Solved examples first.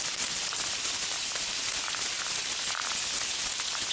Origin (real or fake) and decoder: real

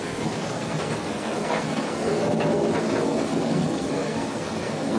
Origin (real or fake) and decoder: fake, codec, SNAC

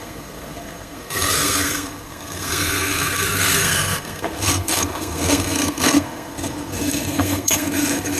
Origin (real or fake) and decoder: fake, codec, SNAC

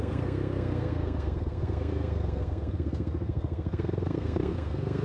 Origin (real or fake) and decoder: fake, codec, SNAC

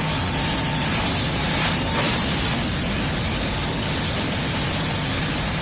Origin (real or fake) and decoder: real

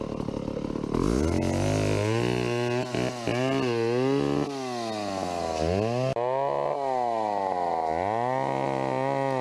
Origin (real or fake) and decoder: real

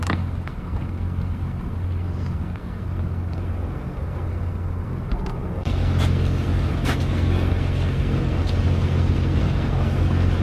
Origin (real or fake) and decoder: fake, codec, SNAC